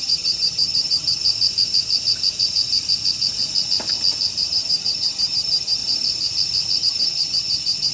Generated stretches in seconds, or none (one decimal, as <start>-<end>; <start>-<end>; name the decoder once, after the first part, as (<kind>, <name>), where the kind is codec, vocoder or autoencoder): 0.0-1.2 (vocoder, HiFi-GAN); 4.5-5.8; 6.8-7.9